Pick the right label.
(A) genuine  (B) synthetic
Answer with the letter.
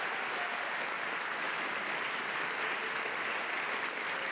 A